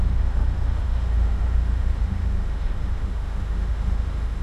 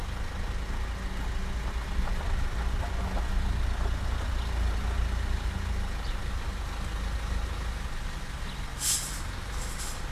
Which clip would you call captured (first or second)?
second